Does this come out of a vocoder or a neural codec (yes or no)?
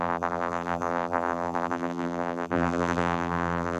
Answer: yes